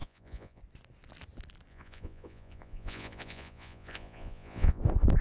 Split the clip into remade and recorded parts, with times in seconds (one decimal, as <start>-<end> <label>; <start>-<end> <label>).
0.0-0.6 remade; 0.6-1.7 recorded; 1.7-4.8 remade; 4.8-5.2 recorded